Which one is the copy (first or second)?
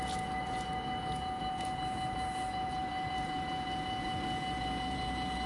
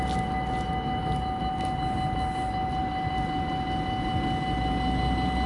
first